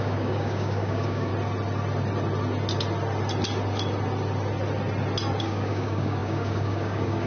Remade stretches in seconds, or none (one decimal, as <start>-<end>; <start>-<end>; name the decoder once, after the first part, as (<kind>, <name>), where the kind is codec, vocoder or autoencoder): 0.0-1.3 (codec, DAC); 5.4-7.3

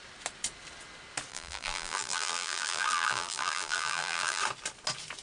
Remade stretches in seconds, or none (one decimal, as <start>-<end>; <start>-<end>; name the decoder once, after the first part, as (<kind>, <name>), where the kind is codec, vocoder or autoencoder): 1.3-4.4 (vocoder, BigVGAN v2)

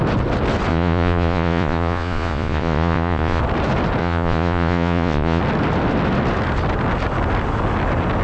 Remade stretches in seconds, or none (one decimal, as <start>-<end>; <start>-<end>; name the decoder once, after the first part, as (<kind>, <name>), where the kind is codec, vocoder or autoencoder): 0.7-3.4 (vocoder, Vocos); 4.0-5.4

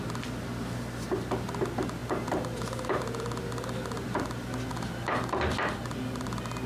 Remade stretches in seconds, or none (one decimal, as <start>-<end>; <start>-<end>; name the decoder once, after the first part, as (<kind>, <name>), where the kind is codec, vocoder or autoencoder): none

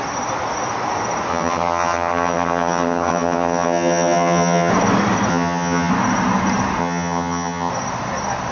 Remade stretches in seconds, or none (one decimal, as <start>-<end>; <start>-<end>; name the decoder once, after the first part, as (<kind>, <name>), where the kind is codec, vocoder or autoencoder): 1.3-4.7 (vocoder, HiFi-GAN); 5.3-5.9; 6.8-7.7

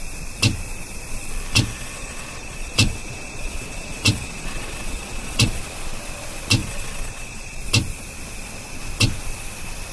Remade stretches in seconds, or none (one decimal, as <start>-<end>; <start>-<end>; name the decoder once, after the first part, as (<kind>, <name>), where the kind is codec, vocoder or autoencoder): 1.5-5.6 (vocoder, Vocos); 6.6-7.6

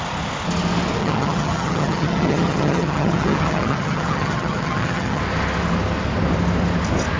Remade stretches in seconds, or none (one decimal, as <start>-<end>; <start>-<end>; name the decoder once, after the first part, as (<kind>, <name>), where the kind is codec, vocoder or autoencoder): 1.0-5.2 (vocoder, HiFi-GAN)

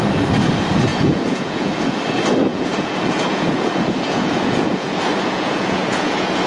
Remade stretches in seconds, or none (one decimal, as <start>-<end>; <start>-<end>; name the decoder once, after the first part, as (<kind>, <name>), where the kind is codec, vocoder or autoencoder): 0.9-2.0 (vocoder, Vocos); 2.5-6.5